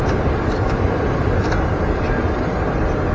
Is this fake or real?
real